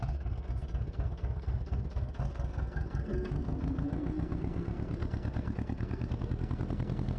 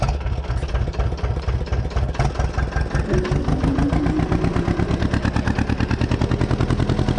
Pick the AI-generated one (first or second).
first